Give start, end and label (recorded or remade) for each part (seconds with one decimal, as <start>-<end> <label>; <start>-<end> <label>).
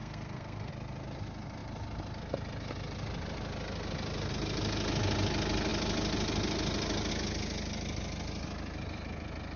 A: 0.0-0.7 remade; 0.7-9.6 recorded